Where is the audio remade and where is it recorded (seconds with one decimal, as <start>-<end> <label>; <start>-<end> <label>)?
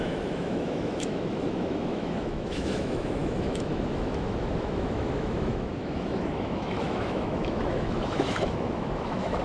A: 0.0-9.4 remade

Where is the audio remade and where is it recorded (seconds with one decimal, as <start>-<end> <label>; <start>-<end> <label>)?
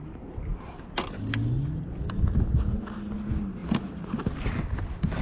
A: 0.0-5.2 recorded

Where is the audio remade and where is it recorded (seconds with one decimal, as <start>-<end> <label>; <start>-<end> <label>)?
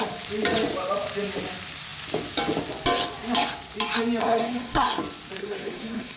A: 0.0-4.2 recorded; 4.2-5.0 remade; 5.0-5.4 recorded; 5.4-6.2 remade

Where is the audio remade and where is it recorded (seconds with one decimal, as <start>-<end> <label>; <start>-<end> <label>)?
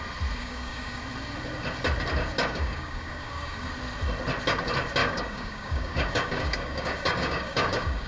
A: 0.0-0.4 recorded; 0.4-1.0 remade; 1.0-2.4 recorded; 2.4-3.7 remade; 3.7-5.0 recorded; 5.0-8.1 remade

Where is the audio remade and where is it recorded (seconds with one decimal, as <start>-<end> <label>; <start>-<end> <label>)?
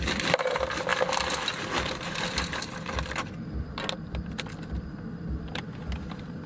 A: 0.0-6.5 recorded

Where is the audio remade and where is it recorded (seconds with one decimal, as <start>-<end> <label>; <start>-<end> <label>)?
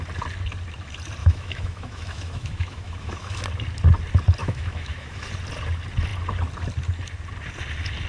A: 0.0-1.2 recorded; 1.2-3.4 remade; 3.4-4.4 recorded; 4.4-5.3 remade; 5.3-8.1 recorded